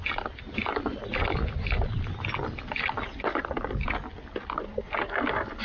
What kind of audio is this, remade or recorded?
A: recorded